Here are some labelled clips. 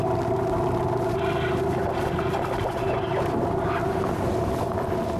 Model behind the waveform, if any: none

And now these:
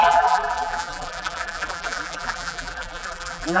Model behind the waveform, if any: vocoder, BigVGAN v2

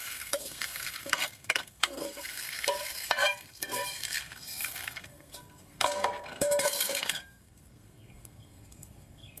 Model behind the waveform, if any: codec, SNAC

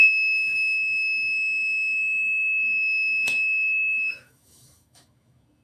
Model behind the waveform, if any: autoencoder, DAC-VAE